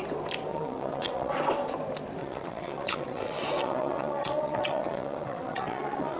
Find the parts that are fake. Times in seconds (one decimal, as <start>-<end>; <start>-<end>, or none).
0.5-1.3; 2.2-6.2